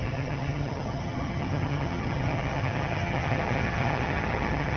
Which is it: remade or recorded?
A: remade